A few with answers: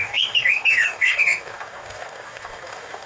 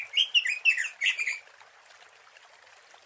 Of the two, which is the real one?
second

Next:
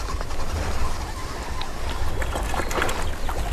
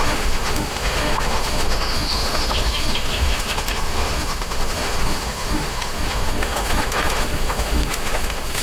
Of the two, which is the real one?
first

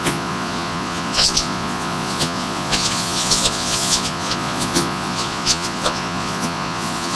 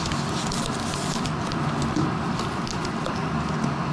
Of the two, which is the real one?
second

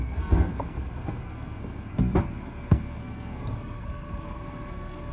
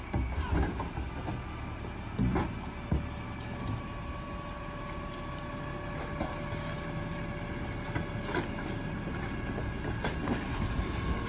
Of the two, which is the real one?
second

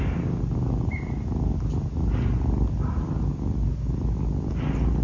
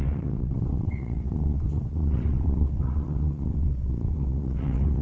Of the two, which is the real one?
first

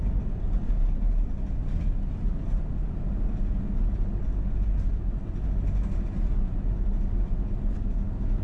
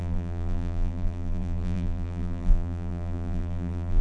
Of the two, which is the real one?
first